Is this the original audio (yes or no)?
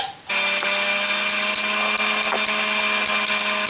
yes